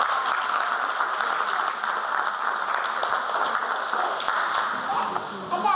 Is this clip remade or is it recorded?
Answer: recorded